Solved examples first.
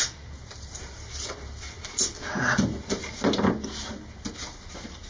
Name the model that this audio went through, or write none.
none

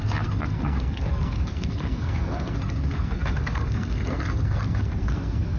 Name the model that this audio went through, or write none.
codec, SNAC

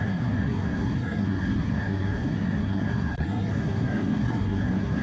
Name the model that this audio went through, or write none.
codec, SNAC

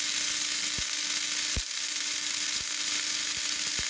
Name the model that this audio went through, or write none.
none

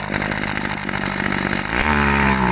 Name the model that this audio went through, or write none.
none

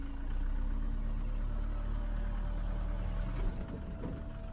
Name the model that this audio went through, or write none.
none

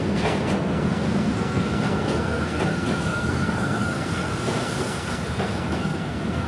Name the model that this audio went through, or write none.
codec, SNAC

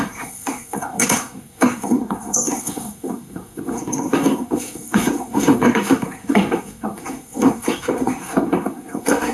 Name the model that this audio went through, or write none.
codec, SNAC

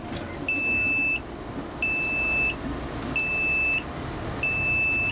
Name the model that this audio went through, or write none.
none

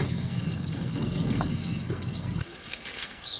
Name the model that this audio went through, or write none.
codec, SNAC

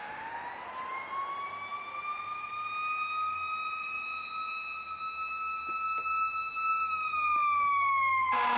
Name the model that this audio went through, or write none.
none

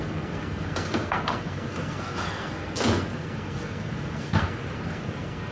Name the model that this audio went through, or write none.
codec, SNAC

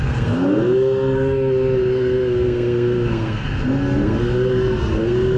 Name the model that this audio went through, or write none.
codec, SNAC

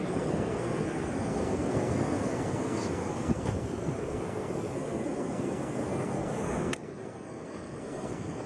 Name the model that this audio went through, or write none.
codec, SNAC